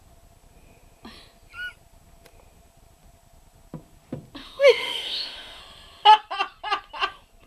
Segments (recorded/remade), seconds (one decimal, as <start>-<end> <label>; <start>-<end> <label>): 0.0-4.4 recorded; 4.4-5.6 remade; 5.6-7.5 recorded